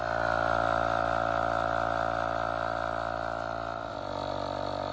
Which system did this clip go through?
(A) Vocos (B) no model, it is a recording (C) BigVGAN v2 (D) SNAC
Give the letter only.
B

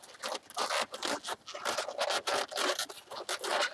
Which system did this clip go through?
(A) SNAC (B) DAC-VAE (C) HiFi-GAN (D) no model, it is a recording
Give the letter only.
D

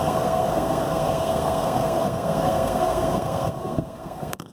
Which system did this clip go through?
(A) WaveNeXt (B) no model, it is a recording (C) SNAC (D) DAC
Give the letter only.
C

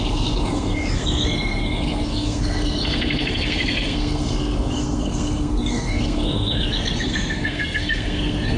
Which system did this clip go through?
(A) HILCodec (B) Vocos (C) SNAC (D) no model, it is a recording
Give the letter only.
C